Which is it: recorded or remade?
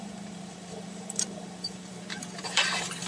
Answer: remade